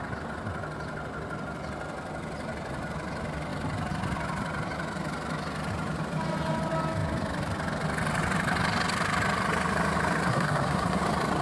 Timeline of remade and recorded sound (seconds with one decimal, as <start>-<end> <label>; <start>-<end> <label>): 0.0-10.3 recorded; 10.3-11.0 remade; 11.0-11.4 recorded